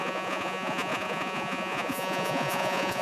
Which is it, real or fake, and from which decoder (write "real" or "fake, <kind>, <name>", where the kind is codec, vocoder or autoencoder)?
fake, vocoder, Vocos